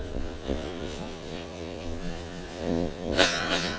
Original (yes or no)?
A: no